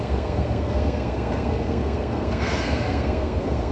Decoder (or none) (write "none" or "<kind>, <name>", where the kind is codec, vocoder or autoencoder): codec, SNAC